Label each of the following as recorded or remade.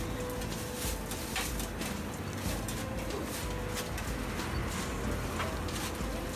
recorded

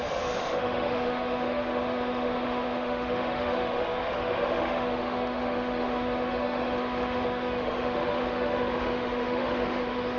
remade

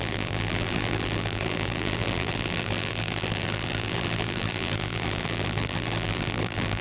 remade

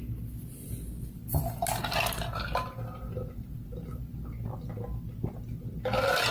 recorded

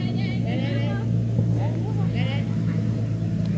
recorded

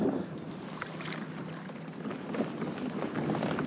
recorded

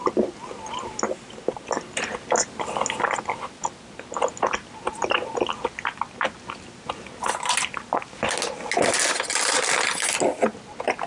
recorded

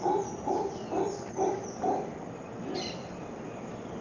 recorded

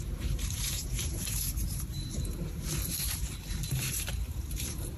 remade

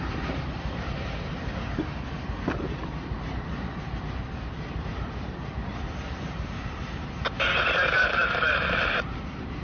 remade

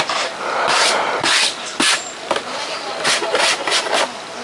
recorded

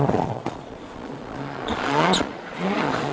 remade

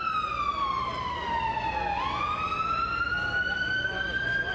recorded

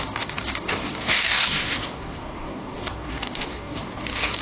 remade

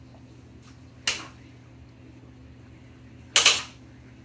recorded